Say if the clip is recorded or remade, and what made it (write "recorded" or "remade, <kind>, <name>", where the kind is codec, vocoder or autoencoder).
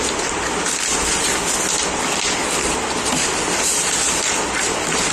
recorded